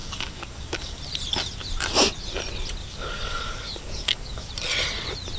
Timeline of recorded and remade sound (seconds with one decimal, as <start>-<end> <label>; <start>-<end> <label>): 0.0-1.0 remade; 1.0-2.8 recorded; 2.8-4.5 remade; 4.5-5.4 recorded